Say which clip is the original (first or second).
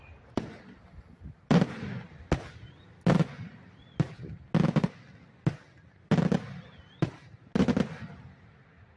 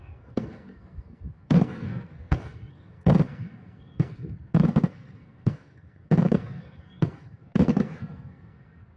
first